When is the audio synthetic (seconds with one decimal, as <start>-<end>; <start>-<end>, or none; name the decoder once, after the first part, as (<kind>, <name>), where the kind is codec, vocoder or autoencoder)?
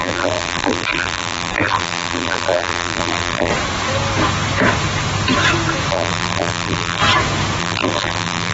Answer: 0.0-3.5 (vocoder, BigVGAN v2); 5.9-7.0; 7.6-8.5